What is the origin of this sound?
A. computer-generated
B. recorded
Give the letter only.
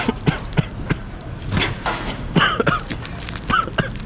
B